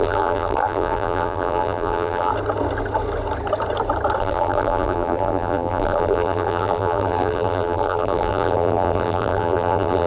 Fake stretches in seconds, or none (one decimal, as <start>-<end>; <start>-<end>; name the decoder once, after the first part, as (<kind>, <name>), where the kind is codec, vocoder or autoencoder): 0.0-2.3 (vocoder, BigVGAN v2); 4.2-10.1

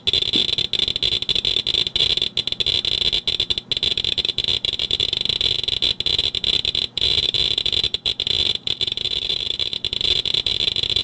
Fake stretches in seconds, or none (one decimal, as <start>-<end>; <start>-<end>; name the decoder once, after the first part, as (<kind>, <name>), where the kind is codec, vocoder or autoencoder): 3.9-5.2 (vocoder, BigVGAN v2); 6.1-11.0